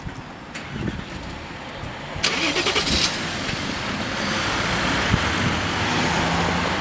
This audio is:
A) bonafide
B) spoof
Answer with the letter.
A